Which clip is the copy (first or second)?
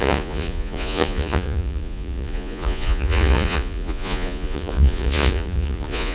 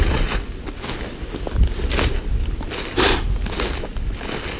first